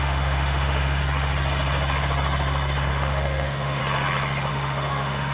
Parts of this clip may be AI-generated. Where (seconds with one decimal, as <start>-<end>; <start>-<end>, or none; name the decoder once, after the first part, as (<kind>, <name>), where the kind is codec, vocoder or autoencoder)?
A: 0.0-1.0 (autoencoder, DAC-VAE); 2.9-3.8; 4.5-5.3